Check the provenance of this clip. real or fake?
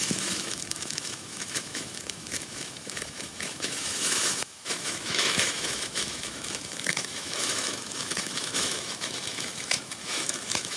fake